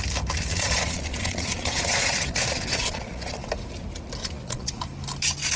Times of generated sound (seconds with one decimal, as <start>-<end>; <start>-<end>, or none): 0.5-3.5; 4.2-4.8